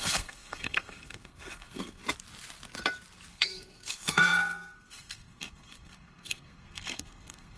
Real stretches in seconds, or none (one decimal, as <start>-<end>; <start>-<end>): 2.0-3.3